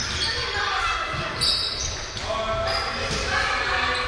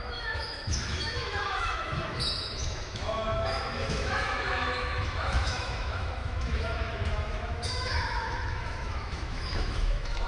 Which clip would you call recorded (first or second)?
first